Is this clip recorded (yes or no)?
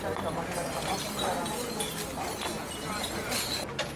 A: yes